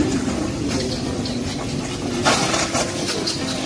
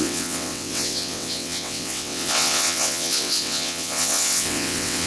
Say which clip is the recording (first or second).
first